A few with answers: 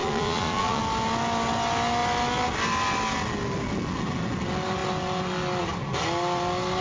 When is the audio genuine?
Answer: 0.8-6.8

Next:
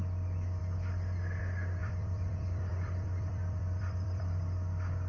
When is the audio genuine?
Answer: 0.0-1.8; 4.4-5.1

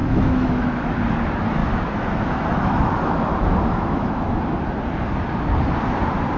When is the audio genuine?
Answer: 1.0-1.6; 4.4-6.4

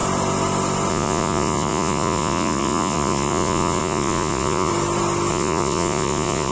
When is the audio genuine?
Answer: 0.0-0.9; 4.7-5.3

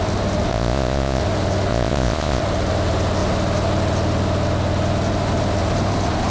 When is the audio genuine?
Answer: 0.0-0.5; 1.2-1.7; 2.4-6.3

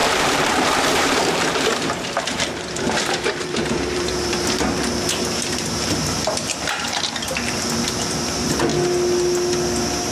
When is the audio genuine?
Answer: 8.7-10.1